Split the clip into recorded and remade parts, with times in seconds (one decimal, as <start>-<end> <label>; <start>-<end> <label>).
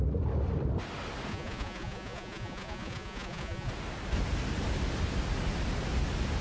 0.0-1.3 recorded; 1.3-3.7 remade; 3.7-6.4 recorded